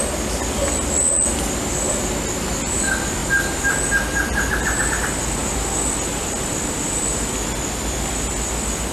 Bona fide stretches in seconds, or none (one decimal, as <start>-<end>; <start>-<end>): 0.0-8.9

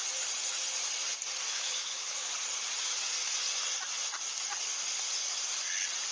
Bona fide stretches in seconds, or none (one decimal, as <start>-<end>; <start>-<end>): 0.0-1.5; 2.3-6.1

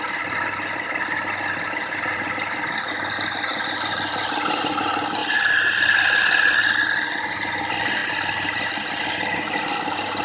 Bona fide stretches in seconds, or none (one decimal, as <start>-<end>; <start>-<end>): 5.2-7.3; 8.0-9.0

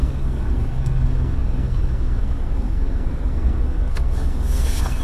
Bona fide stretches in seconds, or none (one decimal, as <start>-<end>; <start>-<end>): none

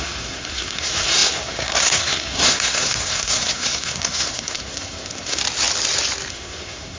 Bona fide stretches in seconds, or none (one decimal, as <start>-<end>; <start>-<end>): 5.4-6.3

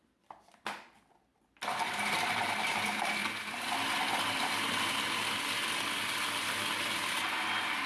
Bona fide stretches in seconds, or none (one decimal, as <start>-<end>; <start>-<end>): 0.0-7.9

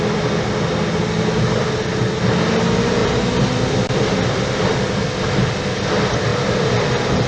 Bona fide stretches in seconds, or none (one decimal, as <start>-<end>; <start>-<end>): 0.0-7.3